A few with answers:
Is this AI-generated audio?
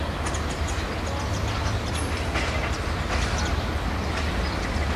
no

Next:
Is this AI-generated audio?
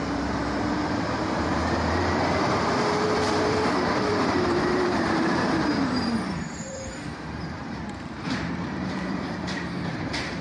yes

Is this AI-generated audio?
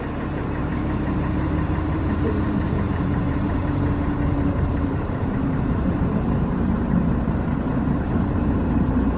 yes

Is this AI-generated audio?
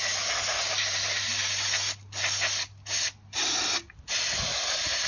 no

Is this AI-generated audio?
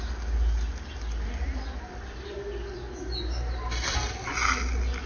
no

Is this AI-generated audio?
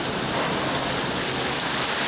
no